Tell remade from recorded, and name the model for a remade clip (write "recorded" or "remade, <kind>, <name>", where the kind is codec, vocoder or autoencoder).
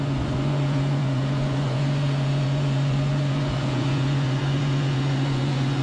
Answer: remade, vocoder, Vocos